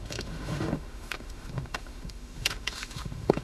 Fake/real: fake